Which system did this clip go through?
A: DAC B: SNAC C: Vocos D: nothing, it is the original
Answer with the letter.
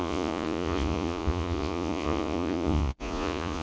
C